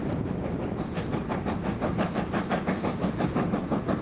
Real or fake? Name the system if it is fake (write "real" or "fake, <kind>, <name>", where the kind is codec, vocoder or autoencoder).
real